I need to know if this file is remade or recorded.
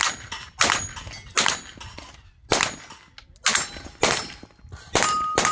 recorded